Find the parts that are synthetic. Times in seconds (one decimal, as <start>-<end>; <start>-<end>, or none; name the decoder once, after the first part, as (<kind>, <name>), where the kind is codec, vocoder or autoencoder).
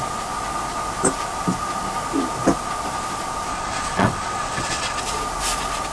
3.5-5.0 (vocoder, WaveNeXt)